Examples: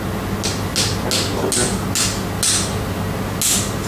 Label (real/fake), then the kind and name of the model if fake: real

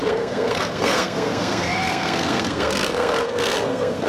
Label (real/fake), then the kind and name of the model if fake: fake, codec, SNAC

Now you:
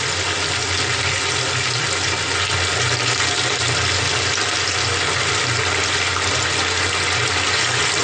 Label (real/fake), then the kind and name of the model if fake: real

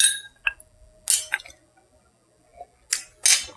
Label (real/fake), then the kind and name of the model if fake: real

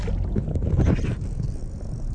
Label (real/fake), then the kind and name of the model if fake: real